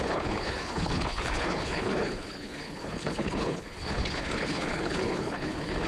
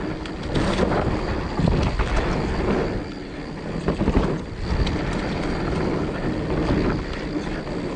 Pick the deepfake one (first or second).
first